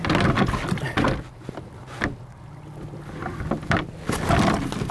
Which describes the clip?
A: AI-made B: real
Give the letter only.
B